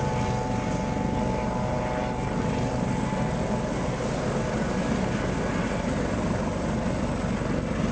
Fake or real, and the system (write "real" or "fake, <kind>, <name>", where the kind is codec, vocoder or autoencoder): real